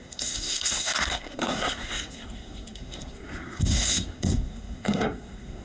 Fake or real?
fake